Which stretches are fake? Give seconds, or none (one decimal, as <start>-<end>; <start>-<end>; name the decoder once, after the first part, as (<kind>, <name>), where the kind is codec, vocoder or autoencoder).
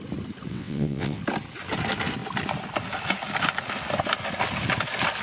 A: 0.5-1.2 (vocoder, WaveNeXt)